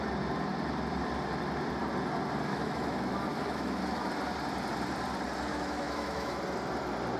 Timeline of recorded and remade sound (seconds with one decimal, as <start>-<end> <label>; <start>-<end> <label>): 0.0-2.5 recorded; 2.5-4.1 remade; 4.1-5.5 recorded; 5.5-6.4 remade; 6.4-7.2 recorded